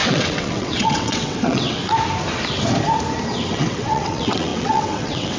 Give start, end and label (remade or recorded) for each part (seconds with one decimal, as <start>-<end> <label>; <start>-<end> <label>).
0.0-1.8 remade; 1.8-3.5 recorded; 3.5-5.4 remade